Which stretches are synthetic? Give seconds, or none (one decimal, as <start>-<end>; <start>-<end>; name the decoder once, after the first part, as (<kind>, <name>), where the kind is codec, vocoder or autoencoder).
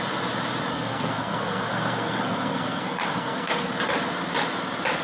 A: 0.7-3.7 (codec, SNAC)